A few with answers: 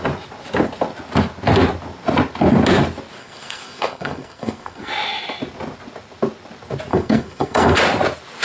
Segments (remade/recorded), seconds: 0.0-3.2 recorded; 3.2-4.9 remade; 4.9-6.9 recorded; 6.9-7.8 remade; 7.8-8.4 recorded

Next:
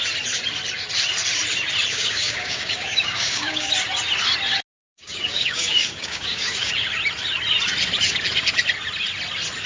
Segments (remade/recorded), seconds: 0.0-1.9 recorded; 1.9-3.7 remade; 3.7-4.8 recorded; 4.8-6.7 remade; 6.7-9.7 recorded

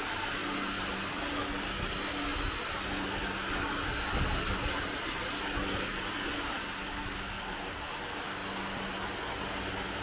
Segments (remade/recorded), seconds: 0.0-10.0 recorded

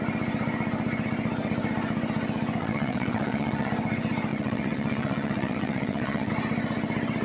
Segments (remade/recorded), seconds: 0.0-2.6 recorded; 2.6-3.7 remade; 3.7-4.3 recorded; 4.3-6.3 remade; 6.3-7.2 recorded